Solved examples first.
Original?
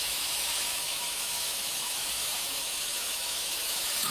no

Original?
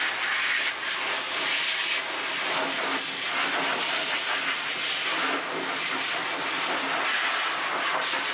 yes